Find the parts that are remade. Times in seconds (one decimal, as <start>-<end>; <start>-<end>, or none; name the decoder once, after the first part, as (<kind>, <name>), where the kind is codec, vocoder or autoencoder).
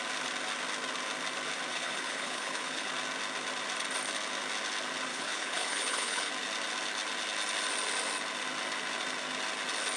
1.7-2.9 (codec, HILCodec); 5.1-6.3